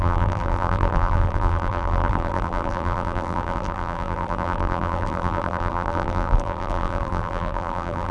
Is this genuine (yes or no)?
no